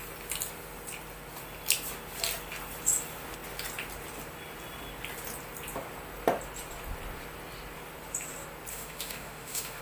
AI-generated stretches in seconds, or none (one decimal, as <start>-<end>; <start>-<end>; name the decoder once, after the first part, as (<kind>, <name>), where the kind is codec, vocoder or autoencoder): 8.7-9.8 (autoencoder, DAC-VAE)